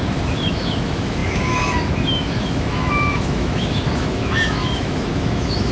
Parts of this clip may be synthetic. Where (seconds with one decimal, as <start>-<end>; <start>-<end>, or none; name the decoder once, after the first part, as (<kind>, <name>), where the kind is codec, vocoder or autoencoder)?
0.0-5.7 (autoencoder, DAC-VAE)